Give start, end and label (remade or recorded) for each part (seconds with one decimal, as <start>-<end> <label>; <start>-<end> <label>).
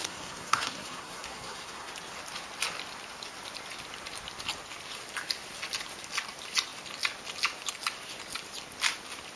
0.0-1.9 remade; 1.9-9.4 recorded